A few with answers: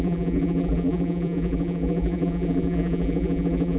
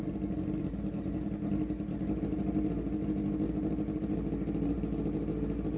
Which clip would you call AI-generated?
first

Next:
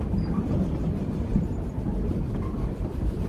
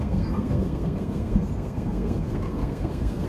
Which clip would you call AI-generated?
second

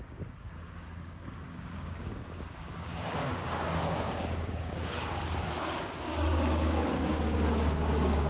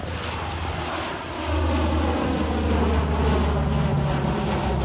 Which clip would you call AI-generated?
first